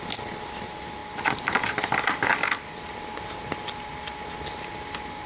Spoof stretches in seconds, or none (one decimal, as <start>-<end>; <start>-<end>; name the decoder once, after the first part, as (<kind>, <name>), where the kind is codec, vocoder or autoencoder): none